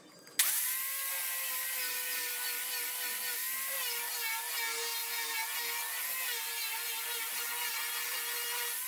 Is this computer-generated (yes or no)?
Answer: no